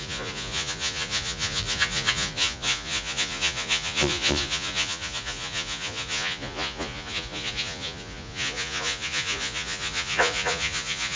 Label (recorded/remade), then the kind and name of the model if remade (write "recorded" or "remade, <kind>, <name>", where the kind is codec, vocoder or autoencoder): remade, vocoder, Vocos